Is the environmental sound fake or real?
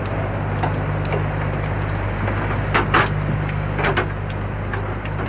real